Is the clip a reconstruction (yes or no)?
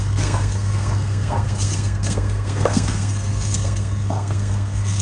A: yes